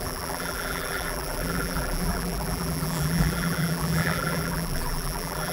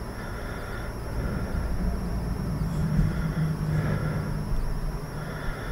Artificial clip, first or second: first